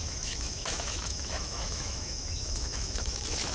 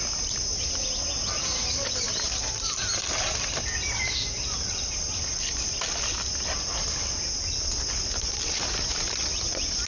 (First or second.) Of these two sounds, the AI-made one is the first